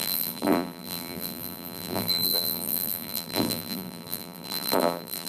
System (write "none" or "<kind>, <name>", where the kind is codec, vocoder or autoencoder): vocoder, BigVGAN v2